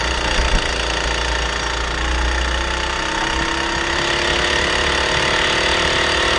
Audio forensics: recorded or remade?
recorded